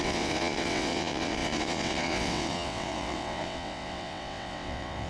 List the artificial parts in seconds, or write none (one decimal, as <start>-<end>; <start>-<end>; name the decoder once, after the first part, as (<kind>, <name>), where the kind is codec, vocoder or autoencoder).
0.0-5.1 (vocoder, WaveNeXt)